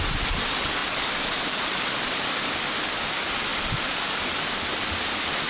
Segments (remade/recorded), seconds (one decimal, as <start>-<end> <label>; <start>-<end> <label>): 0.0-0.8 recorded; 0.8-2.2 remade; 2.2-3.5 recorded; 3.5-5.0 remade; 5.0-5.5 recorded